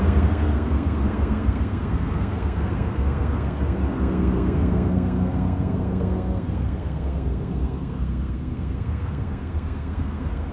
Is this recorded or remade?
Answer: remade